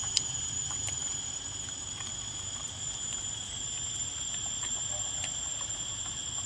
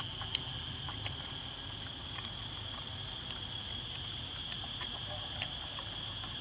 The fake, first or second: first